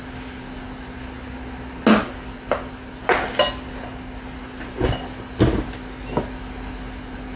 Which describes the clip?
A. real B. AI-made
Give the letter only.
A